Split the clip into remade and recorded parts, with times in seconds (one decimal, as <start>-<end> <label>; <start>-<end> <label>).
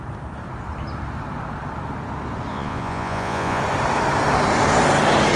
0.0-2.5 recorded; 2.5-3.6 remade; 3.6-5.4 recorded